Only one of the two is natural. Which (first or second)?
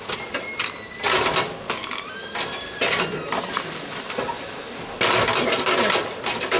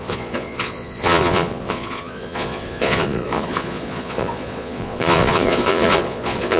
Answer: first